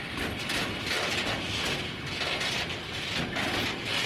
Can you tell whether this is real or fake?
real